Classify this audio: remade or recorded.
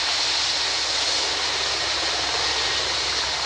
recorded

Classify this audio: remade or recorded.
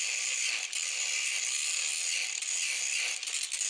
recorded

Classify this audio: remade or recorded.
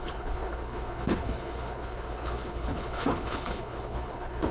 remade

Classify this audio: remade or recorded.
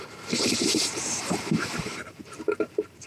remade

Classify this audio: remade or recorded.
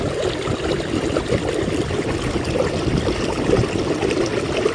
recorded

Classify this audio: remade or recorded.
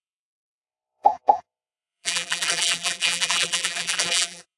remade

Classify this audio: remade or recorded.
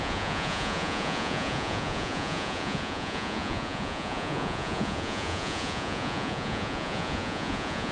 remade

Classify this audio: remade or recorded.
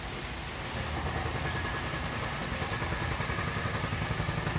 recorded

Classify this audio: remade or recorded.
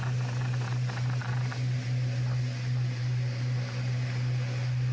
recorded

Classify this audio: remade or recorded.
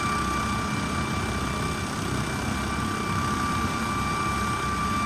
recorded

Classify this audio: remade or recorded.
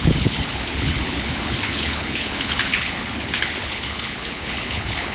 remade